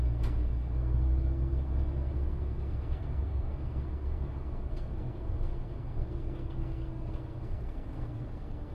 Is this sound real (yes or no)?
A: no